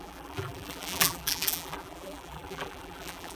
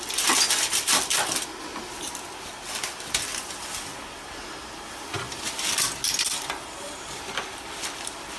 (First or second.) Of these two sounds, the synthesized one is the first